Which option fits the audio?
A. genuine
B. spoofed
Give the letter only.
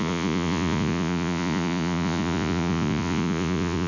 B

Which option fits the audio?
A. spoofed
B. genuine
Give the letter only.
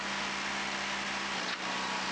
B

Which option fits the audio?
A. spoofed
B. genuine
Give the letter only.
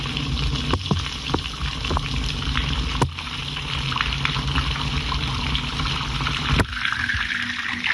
B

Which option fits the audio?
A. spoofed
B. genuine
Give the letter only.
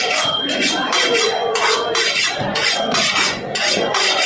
A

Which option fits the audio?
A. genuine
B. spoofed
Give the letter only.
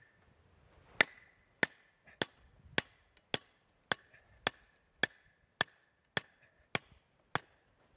A